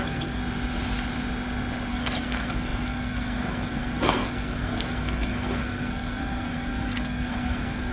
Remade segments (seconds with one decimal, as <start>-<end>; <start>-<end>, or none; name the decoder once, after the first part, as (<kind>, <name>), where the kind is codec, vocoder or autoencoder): 0.0-0.4 (codec, SNAC); 1.9-7.9

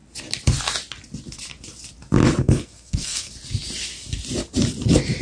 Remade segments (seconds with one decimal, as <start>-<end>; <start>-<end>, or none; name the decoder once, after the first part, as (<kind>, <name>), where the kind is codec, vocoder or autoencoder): 2.4-3.3 (codec, SNAC)

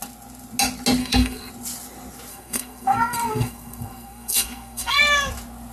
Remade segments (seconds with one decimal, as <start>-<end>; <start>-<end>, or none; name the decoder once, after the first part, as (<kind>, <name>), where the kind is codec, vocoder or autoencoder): 1.0-1.5 (codec, SNAC); 2.3-5.0

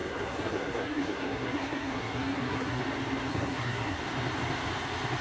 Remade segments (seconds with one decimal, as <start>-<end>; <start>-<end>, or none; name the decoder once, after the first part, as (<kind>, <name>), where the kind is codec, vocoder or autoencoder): 0.0-2.8 (codec, SNAC); 3.3-4.0

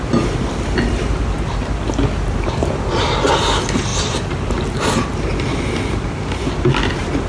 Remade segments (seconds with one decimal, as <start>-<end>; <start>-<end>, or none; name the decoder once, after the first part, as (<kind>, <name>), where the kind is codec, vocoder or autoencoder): none